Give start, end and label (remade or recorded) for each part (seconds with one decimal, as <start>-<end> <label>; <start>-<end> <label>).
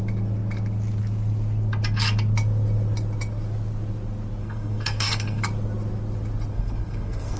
0.0-4.4 recorded; 4.4-5.4 remade; 5.4-6.5 recorded; 6.5-7.4 remade